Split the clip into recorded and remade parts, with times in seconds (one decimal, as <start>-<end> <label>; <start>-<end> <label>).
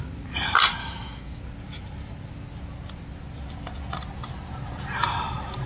0.0-0.8 recorded; 0.8-1.4 remade; 1.4-5.7 recorded